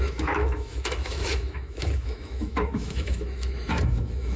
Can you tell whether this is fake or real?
fake